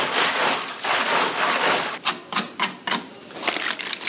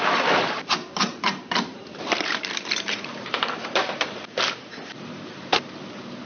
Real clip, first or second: first